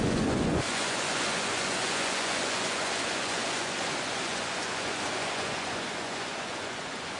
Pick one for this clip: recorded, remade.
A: remade